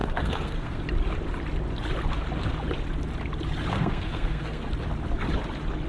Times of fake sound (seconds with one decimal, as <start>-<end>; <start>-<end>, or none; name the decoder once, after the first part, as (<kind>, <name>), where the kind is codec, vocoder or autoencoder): 0.0-0.8 (codec, SNAC); 3.7-4.7